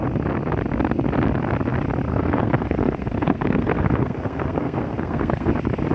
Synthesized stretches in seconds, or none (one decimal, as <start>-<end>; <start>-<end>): 2.1-5.5